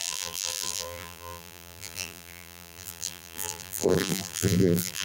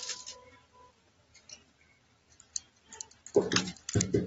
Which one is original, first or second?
second